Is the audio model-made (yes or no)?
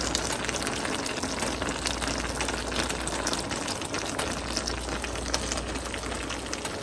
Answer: no